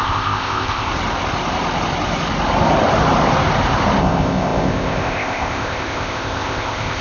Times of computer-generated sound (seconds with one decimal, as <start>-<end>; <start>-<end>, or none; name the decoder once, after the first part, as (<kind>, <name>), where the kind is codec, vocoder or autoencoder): 0.0-0.9 (codec, ZipCodec); 4.0-7.0